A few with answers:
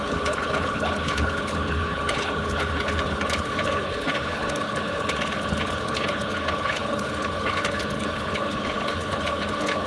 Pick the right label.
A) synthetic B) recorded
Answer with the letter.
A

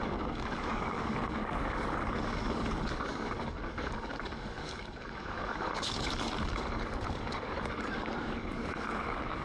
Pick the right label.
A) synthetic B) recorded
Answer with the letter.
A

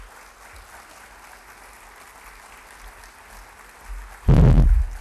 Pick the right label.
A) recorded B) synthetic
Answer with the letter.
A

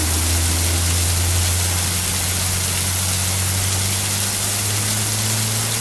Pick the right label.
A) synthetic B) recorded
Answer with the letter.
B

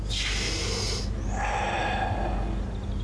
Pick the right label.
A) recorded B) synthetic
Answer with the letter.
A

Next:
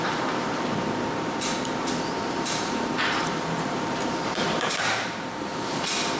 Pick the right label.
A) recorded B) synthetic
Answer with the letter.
B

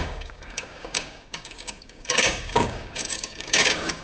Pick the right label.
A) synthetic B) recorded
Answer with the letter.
A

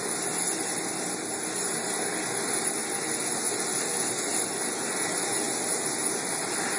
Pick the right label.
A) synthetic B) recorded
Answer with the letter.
B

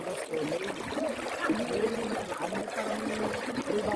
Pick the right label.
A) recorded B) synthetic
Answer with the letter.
A